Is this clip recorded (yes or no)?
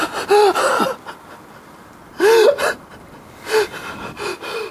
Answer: no